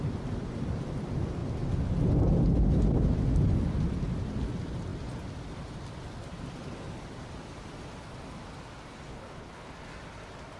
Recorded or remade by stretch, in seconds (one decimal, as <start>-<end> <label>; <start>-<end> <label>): 0.0-9.1 recorded; 9.1-9.7 remade; 9.7-10.6 recorded